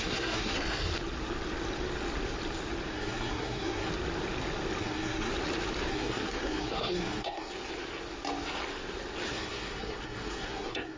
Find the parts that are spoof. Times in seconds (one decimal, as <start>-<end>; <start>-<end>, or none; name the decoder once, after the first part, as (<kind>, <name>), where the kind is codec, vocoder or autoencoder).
0.0-0.9 (codec, SNAC); 2.9-3.9; 4.8-5.3; 5.9-7.5; 9.3-11.0

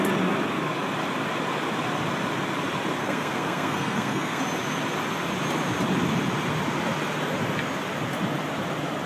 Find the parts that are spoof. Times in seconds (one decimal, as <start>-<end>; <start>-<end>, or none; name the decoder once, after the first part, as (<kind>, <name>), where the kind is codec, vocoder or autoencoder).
3.0-4.4 (codec, SNAC)

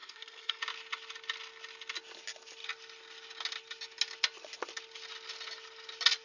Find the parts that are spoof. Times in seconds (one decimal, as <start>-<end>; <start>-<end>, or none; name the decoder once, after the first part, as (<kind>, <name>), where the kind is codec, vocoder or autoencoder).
0.0-0.6 (codec, SNAC)

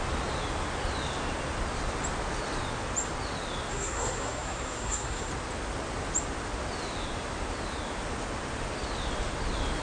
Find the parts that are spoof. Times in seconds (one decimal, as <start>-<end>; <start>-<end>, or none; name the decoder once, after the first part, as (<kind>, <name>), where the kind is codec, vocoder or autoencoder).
3.7-5.3 (codec, SNAC)

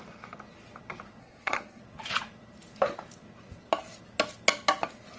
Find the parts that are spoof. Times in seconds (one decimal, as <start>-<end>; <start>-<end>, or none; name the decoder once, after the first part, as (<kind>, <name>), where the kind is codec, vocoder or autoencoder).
1.2-1.8 (codec, SNAC)

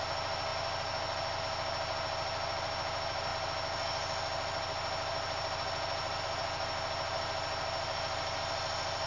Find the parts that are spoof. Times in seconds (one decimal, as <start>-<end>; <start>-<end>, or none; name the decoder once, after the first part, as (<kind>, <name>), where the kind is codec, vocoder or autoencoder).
none

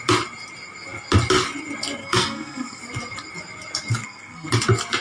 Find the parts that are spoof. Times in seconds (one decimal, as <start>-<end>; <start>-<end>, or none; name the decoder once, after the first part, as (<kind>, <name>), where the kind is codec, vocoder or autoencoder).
2.0-2.8 (codec, SNAC); 4.0-4.5